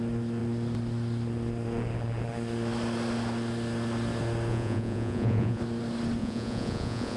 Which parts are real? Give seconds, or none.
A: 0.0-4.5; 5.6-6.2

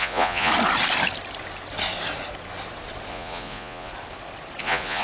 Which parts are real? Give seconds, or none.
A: 0.5-3.1; 3.9-4.6

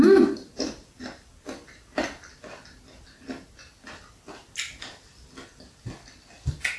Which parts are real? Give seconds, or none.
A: 0.0-6.8

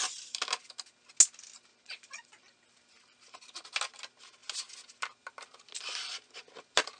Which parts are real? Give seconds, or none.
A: 0.0-1.7; 2.6-7.0

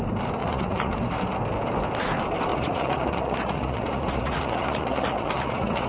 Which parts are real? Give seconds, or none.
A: 0.0-0.4; 1.0-2.5

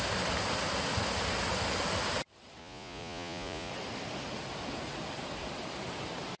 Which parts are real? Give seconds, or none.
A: 0.0-2.6; 3.7-6.4

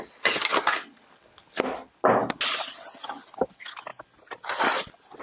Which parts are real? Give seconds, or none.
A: 0.0-5.2

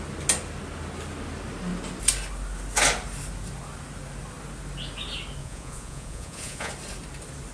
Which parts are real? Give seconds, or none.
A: 0.0-5.4; 6.7-7.5